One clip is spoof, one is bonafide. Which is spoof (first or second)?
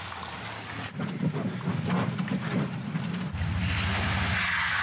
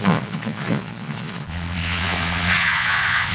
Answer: second